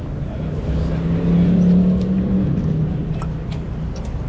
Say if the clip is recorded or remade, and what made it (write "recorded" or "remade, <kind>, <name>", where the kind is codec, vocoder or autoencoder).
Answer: recorded